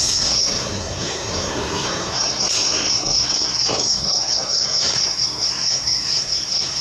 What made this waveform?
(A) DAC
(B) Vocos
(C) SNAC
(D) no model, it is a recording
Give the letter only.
C